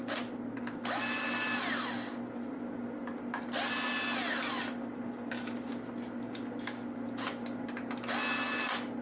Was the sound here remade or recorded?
recorded